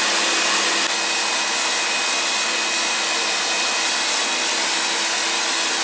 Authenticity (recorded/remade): recorded